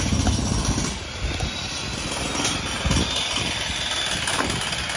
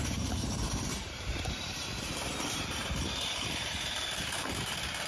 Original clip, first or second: first